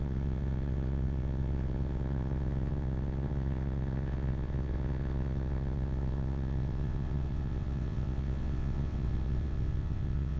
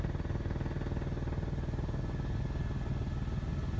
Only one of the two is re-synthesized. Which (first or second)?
first